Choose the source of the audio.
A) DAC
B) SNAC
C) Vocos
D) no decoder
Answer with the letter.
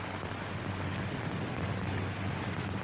D